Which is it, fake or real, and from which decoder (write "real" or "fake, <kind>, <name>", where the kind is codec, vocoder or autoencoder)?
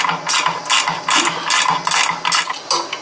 real